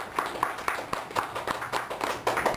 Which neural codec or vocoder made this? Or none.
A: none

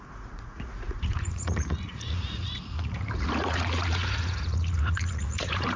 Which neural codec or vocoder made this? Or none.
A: vocoder, Vocos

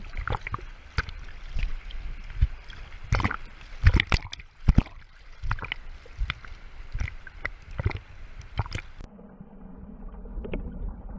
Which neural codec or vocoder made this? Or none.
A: none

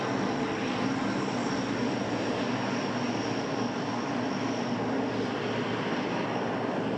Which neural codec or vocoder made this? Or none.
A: none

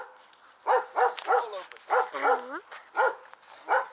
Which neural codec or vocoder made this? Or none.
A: none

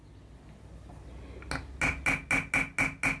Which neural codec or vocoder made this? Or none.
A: none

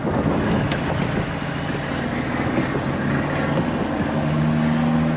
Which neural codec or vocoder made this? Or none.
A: none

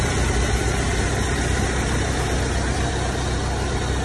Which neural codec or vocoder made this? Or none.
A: none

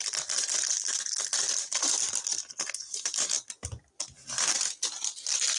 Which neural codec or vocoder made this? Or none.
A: none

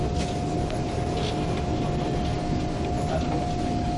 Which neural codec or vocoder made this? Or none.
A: none